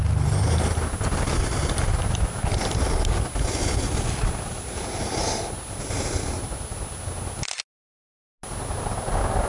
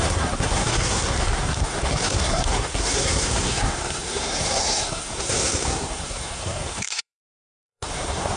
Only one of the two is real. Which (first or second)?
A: first